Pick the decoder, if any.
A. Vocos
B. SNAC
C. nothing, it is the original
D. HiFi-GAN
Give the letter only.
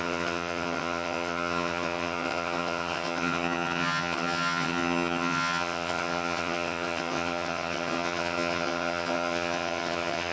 D